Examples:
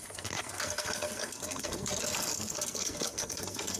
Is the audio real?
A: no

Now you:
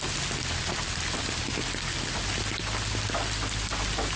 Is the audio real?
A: yes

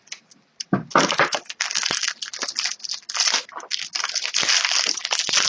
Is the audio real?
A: yes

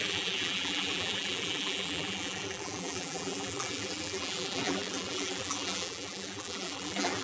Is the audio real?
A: no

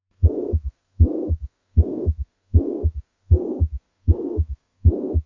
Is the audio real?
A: no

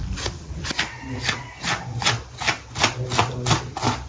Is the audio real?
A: yes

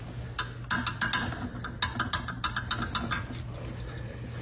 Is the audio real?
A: yes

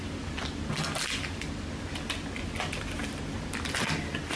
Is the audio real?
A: yes